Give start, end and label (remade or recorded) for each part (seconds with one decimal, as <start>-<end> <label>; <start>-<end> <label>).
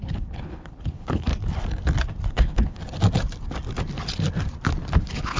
0.0-1.3 remade; 1.3-2.3 recorded; 2.3-2.8 remade; 2.8-5.0 recorded; 5.0-5.4 remade